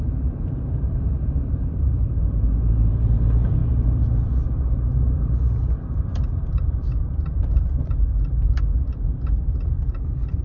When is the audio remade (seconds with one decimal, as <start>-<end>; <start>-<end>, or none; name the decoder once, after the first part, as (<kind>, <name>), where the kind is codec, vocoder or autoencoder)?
0.0-10.4 (vocoder, BigVGAN v2)